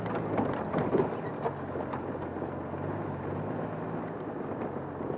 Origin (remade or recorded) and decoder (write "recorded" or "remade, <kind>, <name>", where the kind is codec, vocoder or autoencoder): recorded